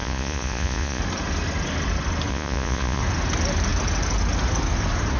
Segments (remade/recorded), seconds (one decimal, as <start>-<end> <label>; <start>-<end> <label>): 0.0-1.0 remade; 1.0-2.3 recorded; 2.3-3.0 remade; 3.0-5.2 recorded